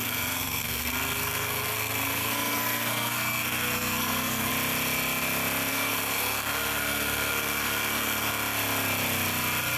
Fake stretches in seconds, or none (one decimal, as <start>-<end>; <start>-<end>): 0.0-4.5; 5.7-8.3